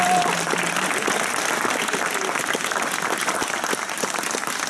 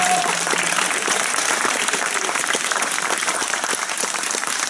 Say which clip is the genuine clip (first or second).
first